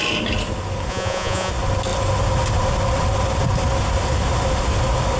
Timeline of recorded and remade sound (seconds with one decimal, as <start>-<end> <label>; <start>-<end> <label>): 0.0-0.9 recorded; 0.9-1.5 remade; 1.5-5.2 recorded